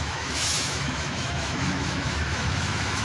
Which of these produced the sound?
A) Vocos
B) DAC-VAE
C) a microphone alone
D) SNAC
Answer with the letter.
B